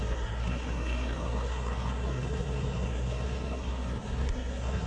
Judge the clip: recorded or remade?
remade